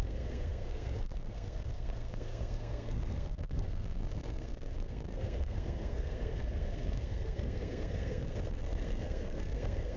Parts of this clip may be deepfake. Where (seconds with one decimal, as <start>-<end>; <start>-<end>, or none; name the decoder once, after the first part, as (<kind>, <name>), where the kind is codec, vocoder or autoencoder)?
0.0-10.0 (codec, SNAC)